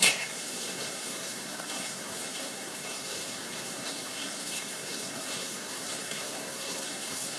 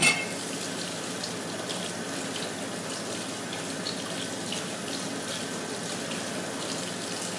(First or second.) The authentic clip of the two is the second